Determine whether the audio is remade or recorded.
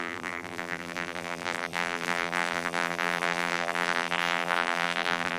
remade